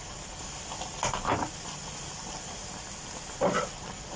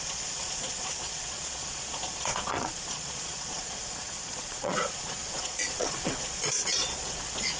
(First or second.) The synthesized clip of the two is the second